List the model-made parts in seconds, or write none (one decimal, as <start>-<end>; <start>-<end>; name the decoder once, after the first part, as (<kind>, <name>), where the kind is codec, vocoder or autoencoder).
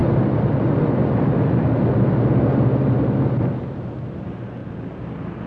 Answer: none